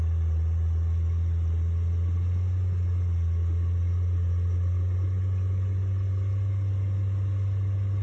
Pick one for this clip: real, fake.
real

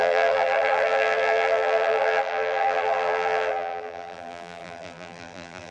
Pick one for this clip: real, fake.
fake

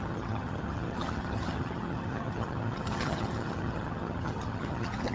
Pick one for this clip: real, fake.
fake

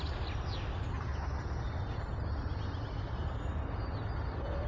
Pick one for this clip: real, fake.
real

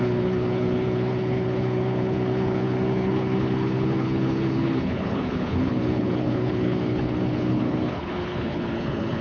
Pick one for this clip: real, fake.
fake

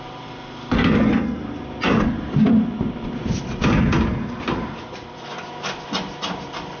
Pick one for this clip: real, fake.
fake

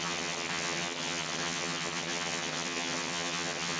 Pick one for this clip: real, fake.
fake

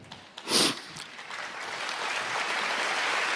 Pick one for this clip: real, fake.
fake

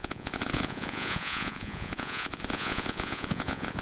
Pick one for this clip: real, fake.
fake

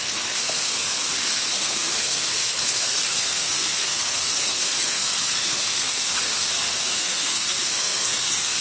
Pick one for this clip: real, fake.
fake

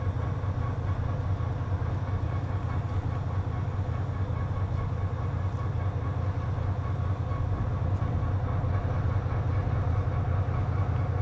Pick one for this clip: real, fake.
real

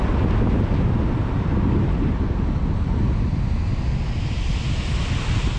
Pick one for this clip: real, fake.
real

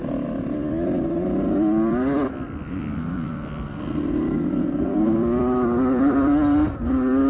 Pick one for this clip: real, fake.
fake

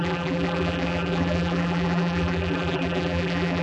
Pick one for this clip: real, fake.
fake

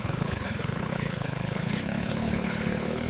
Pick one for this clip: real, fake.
fake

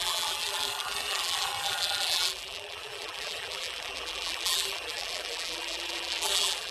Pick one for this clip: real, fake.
fake